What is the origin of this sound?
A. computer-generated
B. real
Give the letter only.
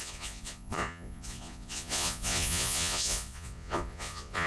A